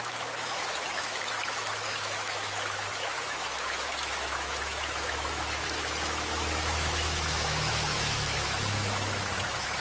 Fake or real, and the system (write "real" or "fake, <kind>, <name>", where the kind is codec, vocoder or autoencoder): fake, autoencoder, DAC-VAE